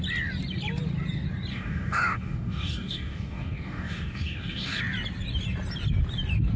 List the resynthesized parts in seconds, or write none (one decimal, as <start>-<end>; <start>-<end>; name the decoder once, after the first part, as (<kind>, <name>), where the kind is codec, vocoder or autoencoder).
1.5-4.8 (codec, DAC)